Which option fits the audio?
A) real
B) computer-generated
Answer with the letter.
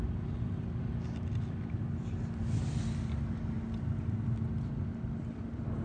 A